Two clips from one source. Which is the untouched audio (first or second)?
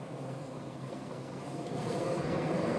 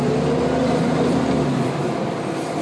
second